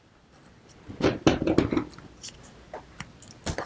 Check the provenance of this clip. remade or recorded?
recorded